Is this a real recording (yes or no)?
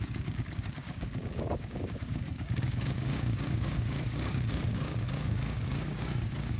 no